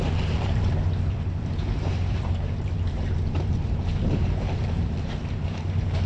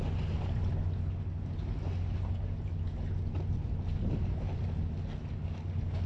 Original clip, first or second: second